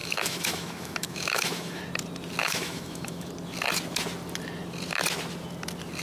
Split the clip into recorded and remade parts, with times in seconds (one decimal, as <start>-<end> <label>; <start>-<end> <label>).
0.0-1.8 remade; 1.8-2.4 recorded; 2.4-3.3 remade; 3.3-6.0 recorded